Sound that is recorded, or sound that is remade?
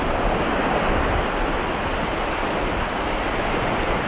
recorded